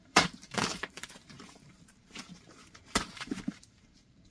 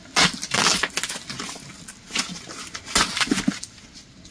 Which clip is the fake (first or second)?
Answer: first